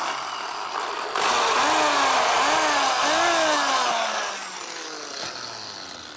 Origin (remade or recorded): recorded